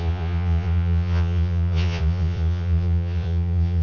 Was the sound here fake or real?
fake